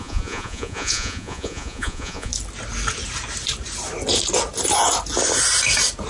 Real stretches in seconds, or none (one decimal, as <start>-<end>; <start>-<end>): 2.3-6.1